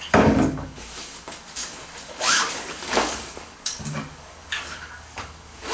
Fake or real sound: fake